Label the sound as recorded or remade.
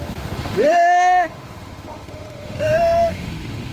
remade